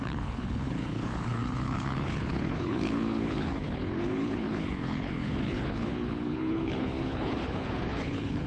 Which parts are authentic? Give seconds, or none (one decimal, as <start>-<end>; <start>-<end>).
none